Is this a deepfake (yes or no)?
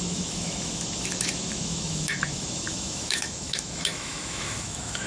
yes